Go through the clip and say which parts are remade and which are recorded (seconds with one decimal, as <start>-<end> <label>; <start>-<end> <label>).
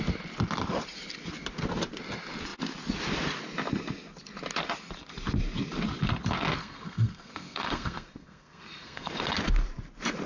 0.0-6.6 recorded; 6.6-9.1 remade; 9.1-10.3 recorded